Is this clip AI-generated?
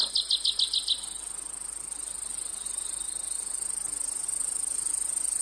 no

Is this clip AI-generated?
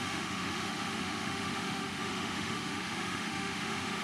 yes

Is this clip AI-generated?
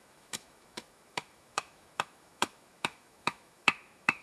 yes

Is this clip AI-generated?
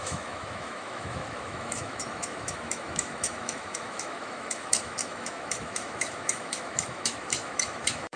yes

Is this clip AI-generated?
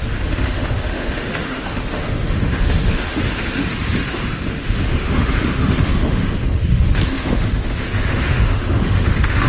yes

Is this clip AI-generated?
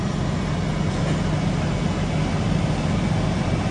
no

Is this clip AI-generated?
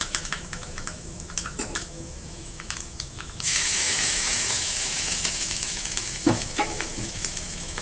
yes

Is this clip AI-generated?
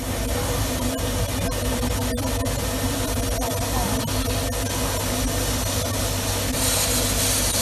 no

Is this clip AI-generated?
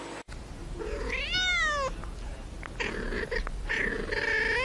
no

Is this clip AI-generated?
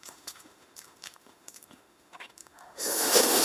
yes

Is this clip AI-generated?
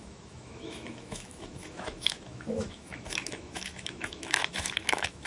yes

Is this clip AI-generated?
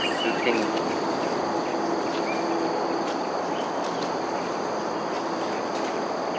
no